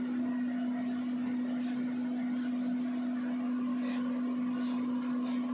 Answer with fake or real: real